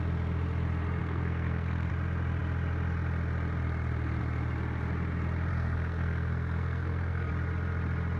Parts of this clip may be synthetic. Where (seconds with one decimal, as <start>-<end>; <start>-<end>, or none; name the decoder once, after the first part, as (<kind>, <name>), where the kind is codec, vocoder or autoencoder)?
1.0-1.9 (codec, SNAC); 5.5-7.3